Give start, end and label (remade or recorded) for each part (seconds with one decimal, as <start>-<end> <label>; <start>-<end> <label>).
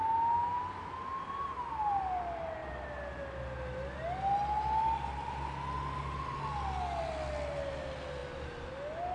0.0-9.1 recorded